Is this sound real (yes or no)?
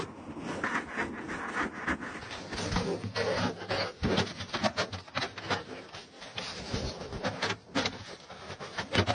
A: yes